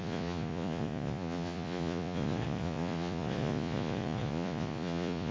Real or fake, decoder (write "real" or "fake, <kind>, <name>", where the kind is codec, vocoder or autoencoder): fake, vocoder, Vocos